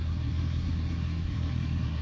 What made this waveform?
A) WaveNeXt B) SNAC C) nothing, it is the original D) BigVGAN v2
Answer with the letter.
B